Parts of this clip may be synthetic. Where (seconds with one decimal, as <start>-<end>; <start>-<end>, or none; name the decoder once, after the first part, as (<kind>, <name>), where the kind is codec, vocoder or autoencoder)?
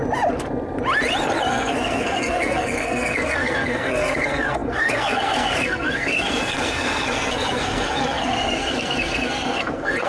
1.5-10.1 (codec, SNAC)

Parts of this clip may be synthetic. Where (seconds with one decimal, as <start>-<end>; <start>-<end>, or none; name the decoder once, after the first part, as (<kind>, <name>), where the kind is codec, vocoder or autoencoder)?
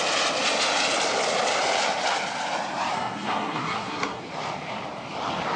2.9-4.2 (codec, SNAC)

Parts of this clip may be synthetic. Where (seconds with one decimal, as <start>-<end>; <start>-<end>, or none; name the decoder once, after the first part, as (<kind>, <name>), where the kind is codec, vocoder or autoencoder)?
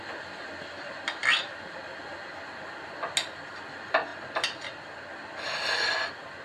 none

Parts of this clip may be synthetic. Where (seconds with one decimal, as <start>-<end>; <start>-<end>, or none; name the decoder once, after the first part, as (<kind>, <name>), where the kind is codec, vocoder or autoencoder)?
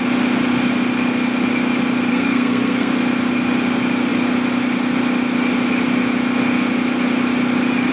2.1-2.9 (codec, SNAC)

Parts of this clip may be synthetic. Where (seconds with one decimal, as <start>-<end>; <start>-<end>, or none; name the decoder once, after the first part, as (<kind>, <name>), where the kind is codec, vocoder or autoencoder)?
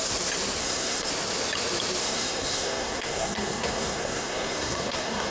0.6-1.1 (codec, SNAC); 2.0-5.3